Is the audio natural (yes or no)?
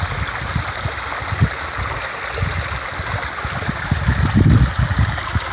yes